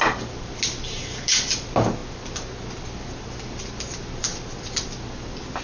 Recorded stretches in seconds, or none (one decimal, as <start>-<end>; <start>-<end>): 0.0-5.6